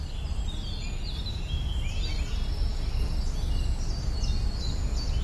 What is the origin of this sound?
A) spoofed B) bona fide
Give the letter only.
B